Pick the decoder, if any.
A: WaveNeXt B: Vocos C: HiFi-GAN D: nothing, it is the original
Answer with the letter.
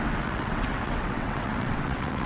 A